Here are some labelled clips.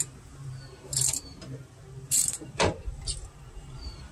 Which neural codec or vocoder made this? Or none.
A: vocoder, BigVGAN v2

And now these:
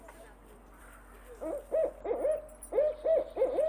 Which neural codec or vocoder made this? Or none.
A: none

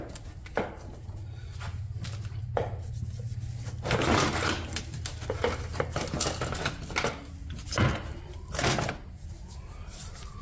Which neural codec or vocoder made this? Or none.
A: none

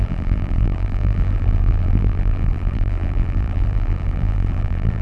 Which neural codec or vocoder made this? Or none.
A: vocoder, BigVGAN v2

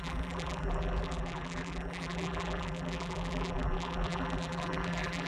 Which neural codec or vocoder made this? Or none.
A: vocoder, BigVGAN v2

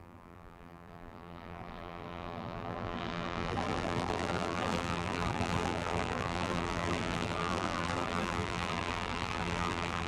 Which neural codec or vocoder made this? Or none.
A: vocoder, BigVGAN v2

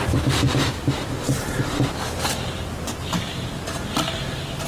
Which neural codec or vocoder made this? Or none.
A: none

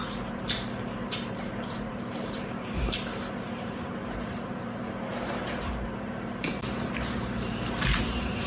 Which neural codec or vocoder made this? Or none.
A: vocoder, BigVGAN v2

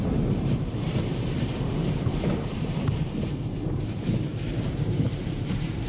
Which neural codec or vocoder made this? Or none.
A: vocoder, BigVGAN v2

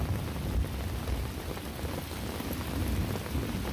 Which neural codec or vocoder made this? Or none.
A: none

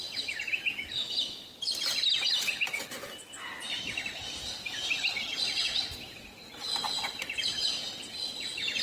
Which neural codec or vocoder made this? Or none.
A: none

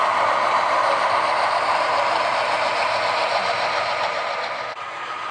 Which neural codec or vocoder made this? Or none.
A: vocoder, BigVGAN v2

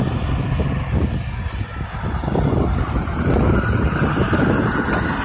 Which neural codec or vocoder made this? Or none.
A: none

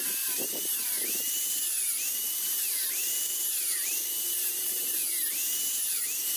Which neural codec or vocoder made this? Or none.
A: vocoder, BigVGAN v2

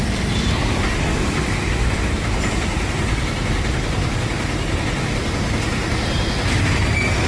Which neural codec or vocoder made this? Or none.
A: none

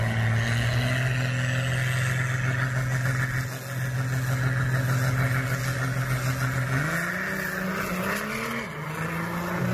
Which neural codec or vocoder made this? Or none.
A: none